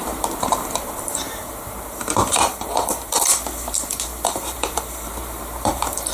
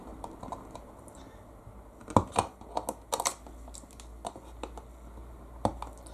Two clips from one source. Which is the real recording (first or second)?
second